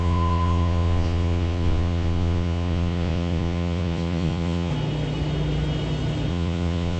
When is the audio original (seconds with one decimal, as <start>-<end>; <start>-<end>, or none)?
4.7-6.3